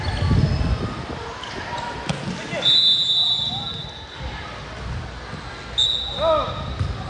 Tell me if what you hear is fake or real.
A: real